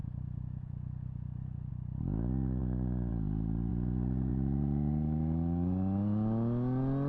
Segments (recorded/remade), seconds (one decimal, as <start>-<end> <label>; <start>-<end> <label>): 0.0-1.7 remade; 1.7-3.7 recorded; 3.7-4.3 remade; 4.3-7.1 recorded